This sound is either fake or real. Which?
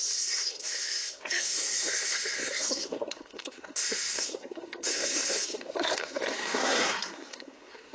fake